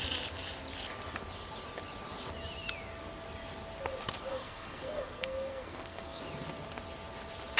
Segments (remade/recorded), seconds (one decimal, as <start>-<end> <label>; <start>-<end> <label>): 0.0-4.3 recorded; 4.3-6.2 remade; 6.2-7.6 recorded